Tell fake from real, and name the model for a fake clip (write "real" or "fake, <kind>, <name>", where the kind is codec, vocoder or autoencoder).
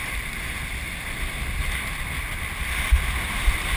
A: real